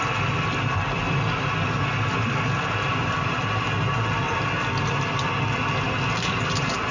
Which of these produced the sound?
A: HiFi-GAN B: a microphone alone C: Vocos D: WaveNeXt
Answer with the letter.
B